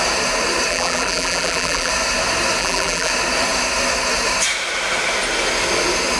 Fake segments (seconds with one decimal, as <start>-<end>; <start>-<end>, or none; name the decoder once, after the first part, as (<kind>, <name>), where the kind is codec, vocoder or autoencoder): 0.7-1.9 (vocoder, BigVGAN v2); 2.6-3.1